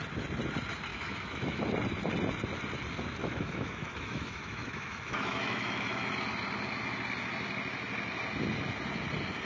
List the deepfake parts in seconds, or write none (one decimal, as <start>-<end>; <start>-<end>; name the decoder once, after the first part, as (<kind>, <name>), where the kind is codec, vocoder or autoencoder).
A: 0.9-1.6 (autoencoder, DAC-VAE); 3.2-6.1